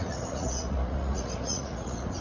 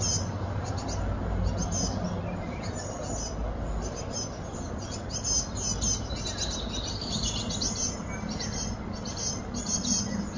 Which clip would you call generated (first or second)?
first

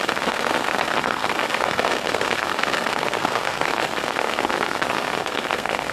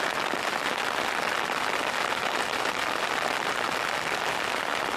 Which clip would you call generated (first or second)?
first